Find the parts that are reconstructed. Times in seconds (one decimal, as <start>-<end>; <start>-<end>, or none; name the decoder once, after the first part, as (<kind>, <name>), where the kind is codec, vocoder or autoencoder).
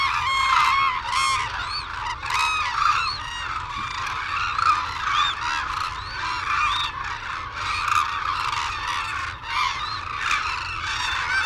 none